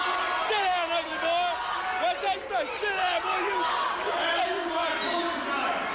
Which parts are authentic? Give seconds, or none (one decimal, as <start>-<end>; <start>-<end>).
0.0-5.9